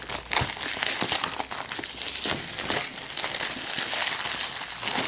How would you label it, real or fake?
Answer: real